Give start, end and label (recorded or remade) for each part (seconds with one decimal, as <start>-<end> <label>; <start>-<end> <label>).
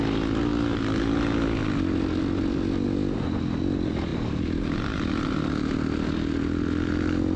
0.0-7.4 recorded